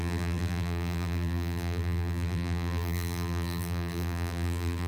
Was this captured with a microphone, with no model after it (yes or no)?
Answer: no